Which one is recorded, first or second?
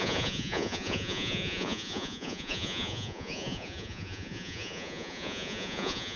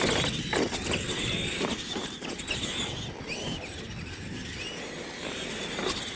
second